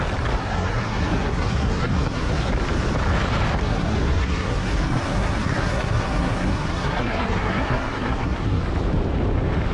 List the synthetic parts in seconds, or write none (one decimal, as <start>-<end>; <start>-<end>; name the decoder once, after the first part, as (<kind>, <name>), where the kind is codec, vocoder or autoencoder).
0.4-2.5 (codec, SNAC); 3.6-8.6